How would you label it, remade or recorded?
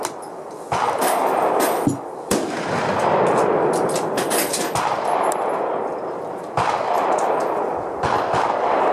recorded